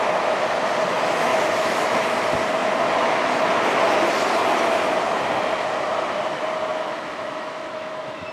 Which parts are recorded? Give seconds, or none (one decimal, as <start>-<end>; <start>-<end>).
0.0-1.3; 2.1-6.7